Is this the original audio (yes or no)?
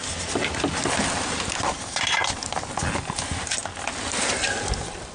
yes